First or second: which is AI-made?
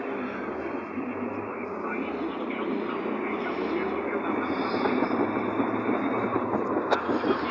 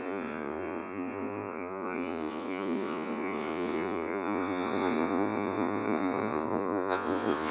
second